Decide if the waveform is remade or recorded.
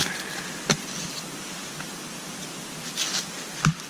recorded